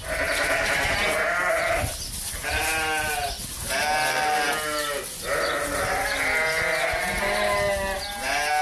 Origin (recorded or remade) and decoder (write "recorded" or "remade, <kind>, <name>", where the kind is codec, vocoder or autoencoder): recorded